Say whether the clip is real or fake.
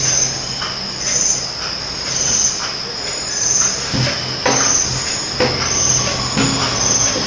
real